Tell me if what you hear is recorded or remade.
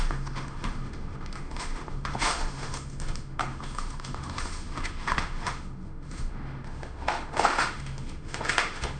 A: remade